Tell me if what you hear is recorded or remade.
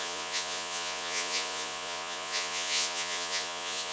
remade